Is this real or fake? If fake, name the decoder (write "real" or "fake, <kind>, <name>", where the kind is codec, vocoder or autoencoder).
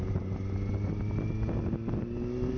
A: real